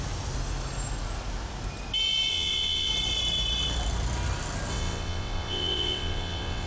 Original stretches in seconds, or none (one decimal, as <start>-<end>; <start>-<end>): 0.0-2.3; 2.9-4.7